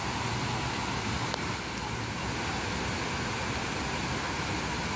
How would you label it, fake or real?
real